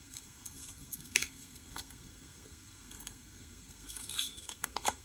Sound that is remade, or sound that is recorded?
remade